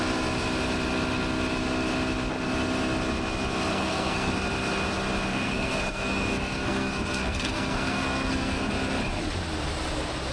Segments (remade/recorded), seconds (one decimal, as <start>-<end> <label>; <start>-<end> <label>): 0.0-3.7 recorded; 3.7-4.3 remade; 4.3-5.3 recorded; 5.3-8.7 remade; 8.7-10.3 recorded